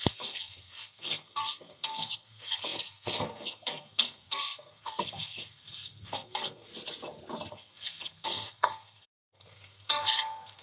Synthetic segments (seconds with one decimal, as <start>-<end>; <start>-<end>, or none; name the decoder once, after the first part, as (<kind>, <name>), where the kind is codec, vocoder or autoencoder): 0.0-6.7 (codec, SNAC); 7.5-10.6